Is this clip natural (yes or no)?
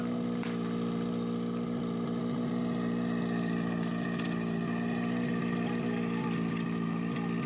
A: yes